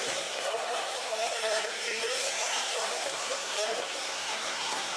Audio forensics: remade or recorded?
remade